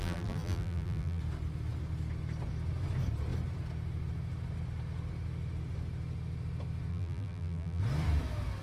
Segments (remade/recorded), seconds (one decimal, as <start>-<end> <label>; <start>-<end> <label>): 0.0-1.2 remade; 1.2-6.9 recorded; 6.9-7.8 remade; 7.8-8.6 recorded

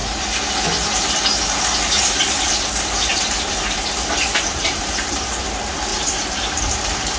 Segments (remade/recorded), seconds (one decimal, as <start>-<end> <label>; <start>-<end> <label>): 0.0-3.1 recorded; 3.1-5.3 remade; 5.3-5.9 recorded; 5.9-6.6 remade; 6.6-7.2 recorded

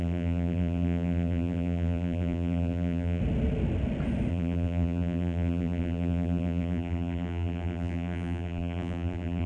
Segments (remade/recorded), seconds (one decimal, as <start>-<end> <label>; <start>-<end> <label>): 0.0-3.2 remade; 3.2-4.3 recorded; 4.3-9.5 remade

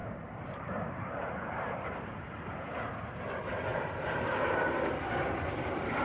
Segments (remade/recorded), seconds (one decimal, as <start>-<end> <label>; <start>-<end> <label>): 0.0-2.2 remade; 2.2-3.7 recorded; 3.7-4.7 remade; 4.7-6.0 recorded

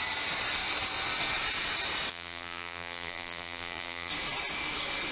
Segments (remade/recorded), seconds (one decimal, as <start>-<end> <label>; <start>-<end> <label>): 0.0-2.1 recorded; 2.1-4.1 remade; 4.1-5.1 recorded